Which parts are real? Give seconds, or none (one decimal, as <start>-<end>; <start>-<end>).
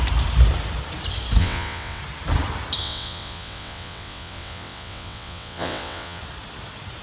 0.0-1.4; 2.0-2.8; 6.2-7.0